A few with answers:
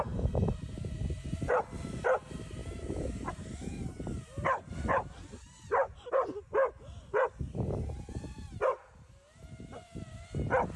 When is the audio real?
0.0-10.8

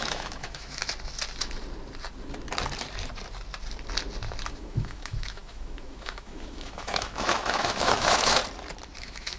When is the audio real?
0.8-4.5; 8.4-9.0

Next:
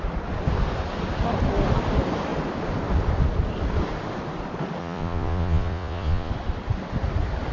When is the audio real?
0.0-4.8; 6.3-7.5